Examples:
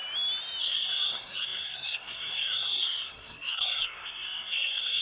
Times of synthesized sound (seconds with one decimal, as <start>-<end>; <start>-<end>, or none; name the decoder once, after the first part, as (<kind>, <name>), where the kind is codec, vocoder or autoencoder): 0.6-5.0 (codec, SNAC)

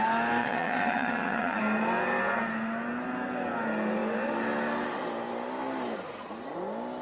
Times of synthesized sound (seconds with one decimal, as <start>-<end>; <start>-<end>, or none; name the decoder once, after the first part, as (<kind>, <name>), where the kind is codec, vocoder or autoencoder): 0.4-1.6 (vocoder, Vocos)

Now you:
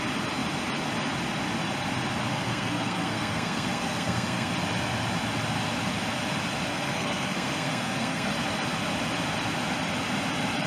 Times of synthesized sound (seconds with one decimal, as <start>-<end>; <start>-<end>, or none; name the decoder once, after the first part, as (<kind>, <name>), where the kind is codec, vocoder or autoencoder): 2.3-4.5 (codec, SNAC); 6.7-8.3

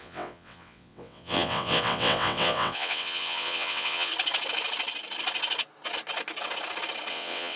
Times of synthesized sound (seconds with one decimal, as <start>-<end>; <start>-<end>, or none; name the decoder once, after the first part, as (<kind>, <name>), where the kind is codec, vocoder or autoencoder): 0.0-4.1 (vocoder, WaveNeXt); 7.1-7.6